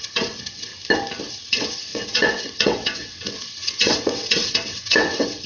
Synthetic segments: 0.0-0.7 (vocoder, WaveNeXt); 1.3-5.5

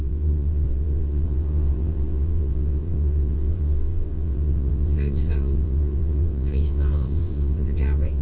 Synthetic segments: 0.0-8.2 (vocoder, WaveNeXt)

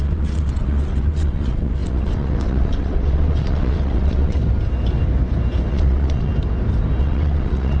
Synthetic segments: 0.0-4.4 (vocoder, WaveNeXt); 5.7-6.3; 7.0-7.8

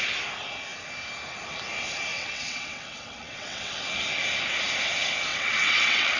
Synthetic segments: 2.1-3.7 (vocoder, WaveNeXt); 5.3-6.2

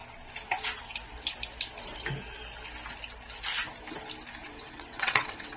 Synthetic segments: 4.4-5.6 (vocoder, WaveNeXt)

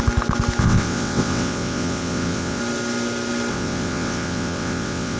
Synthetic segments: 0.6-2.6 (vocoder, WaveNeXt); 3.5-5.2

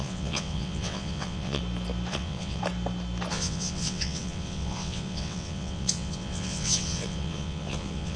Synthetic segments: 0.0-1.6 (vocoder, WaveNeXt); 2.1-2.6; 3.3-8.2

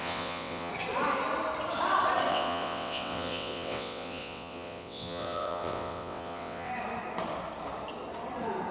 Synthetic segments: 0.0-0.7 (vocoder, WaveNeXt); 2.3-6.7